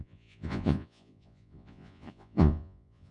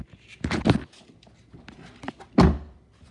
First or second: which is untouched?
second